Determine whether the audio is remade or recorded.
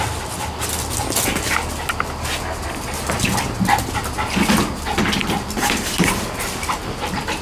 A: recorded